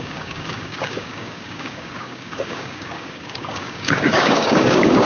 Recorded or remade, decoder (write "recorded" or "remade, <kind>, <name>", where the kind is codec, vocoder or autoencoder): remade, codec, DAC